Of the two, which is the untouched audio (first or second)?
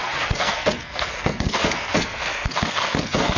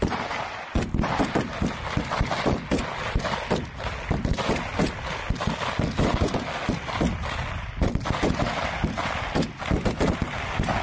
second